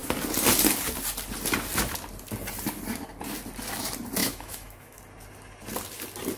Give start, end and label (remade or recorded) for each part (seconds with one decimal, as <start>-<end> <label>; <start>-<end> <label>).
0.0-4.2 recorded; 4.2-5.0 remade; 5.0-6.4 recorded